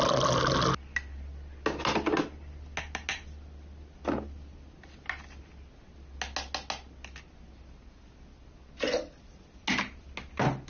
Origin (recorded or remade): recorded